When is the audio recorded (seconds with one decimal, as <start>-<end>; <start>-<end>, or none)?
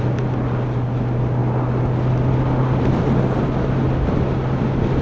0.0-5.0